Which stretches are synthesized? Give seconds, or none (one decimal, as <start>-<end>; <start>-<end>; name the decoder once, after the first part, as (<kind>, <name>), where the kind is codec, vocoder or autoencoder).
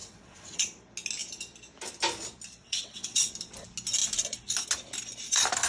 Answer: 0.0-0.6 (vocoder, WaveNeXt); 2.6-3.3